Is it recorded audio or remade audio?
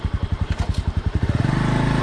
remade